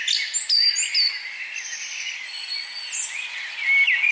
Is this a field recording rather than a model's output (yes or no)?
yes